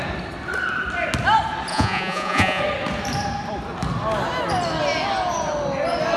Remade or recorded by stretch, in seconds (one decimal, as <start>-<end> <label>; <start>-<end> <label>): 0.0-1.7 recorded; 1.7-2.6 remade; 2.6-6.2 recorded